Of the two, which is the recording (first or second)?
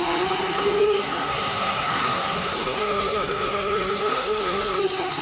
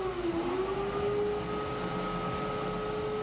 second